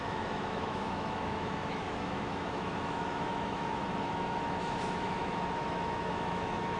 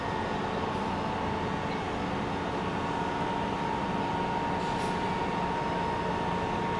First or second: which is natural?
second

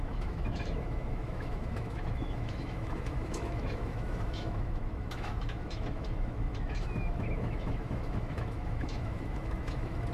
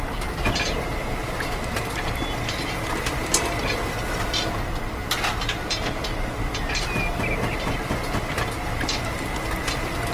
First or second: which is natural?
second